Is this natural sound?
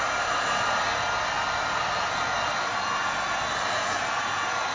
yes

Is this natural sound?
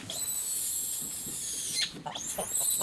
yes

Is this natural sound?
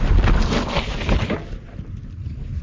yes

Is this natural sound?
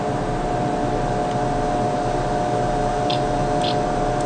yes